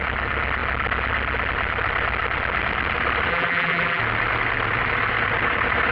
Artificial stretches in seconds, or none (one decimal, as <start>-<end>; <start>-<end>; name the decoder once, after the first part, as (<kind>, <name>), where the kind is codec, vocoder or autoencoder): 3.3-4.0 (vocoder, BigVGAN v2)